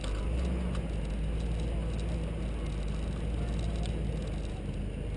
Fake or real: real